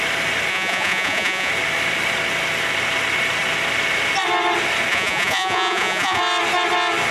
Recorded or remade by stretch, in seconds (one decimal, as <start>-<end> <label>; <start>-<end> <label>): 0.0-0.5 recorded; 0.5-1.5 remade; 1.5-4.9 recorded; 4.9-6.2 remade; 6.2-7.1 recorded